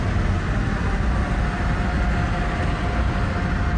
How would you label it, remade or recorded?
recorded